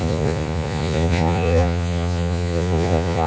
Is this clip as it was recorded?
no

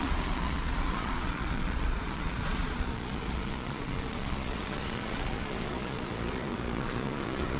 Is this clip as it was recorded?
no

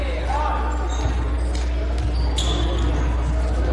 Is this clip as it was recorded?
yes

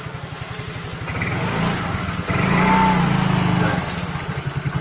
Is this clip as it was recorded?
yes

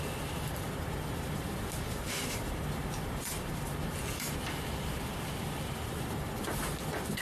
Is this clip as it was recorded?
no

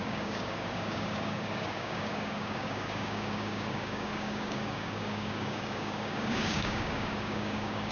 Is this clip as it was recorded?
no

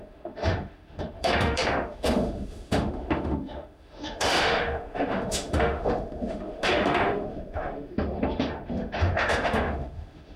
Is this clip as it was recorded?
no